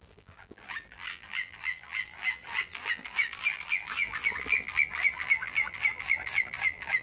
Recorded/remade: remade